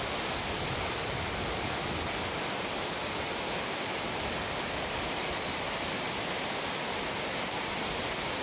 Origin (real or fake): real